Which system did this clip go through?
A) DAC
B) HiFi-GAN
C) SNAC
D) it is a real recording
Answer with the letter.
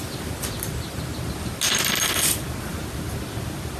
D